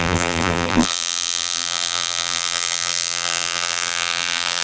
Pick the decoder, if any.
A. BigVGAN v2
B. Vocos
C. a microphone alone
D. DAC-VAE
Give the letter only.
A